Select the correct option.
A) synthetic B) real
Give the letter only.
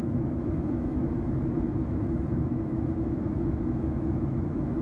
A